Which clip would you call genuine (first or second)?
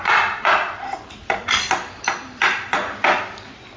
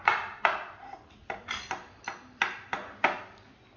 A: second